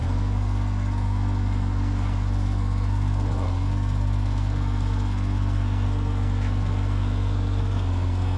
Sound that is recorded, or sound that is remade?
remade